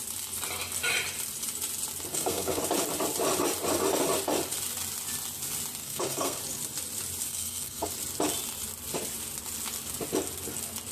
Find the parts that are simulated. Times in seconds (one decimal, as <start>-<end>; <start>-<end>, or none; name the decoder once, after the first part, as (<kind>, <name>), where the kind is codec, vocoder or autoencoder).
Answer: 2.1-2.6 (codec, SNAC); 5.8-6.4; 7.3-7.9

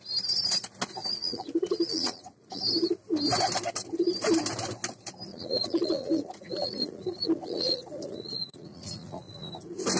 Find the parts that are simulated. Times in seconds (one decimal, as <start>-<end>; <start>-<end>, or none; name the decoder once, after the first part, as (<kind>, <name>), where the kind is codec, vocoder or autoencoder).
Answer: 1.0-2.6 (vocoder, Vocos); 5.3-9.5

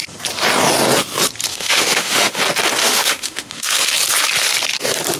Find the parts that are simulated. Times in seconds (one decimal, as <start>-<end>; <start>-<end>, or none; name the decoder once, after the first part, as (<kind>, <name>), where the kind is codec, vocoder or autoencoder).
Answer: 1.5-2.4 (autoencoder, DAC-VAE); 2.8-3.8